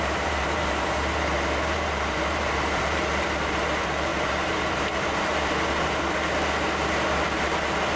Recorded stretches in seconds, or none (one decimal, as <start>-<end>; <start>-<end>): 5.3-8.0